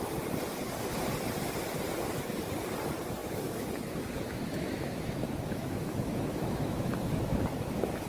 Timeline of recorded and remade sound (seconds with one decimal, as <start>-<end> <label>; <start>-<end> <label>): 0.0-3.2 recorded; 3.2-8.1 remade